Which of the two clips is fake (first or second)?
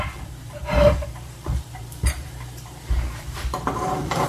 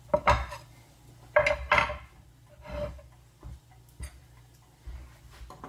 first